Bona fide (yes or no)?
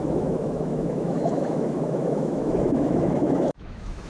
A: no